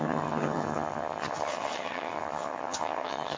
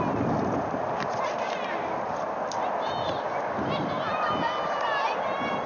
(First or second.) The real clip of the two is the second